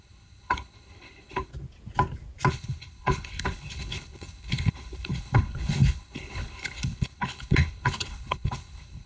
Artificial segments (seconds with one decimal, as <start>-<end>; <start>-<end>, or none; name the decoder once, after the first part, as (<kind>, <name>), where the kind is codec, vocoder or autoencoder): 0.0-1.5 (codec, HILCodec); 2.5-9.1